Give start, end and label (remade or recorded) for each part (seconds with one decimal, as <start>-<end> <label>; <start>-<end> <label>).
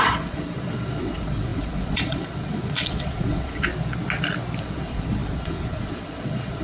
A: 0.0-3.7 remade; 3.7-4.6 recorded; 4.6-6.6 remade